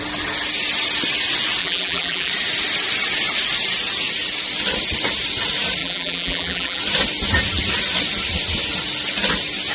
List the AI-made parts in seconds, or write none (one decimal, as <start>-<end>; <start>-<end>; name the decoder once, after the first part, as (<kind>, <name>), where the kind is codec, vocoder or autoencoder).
1.6-2.3 (vocoder, BigVGAN v2); 5.8-6.8